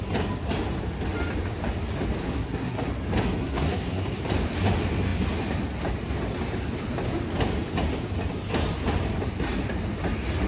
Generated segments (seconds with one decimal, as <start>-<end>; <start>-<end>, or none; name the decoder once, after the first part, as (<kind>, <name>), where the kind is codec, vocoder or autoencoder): 2.2-2.9 (codec, SNAC); 3.4-4.0